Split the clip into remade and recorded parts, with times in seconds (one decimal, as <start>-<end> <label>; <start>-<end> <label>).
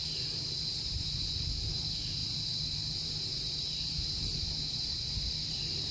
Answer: 0.0-0.7 recorded; 0.7-1.3 remade; 1.3-2.2 recorded; 2.2-5.3 remade; 5.3-5.9 recorded